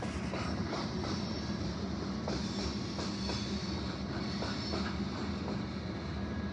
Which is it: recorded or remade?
recorded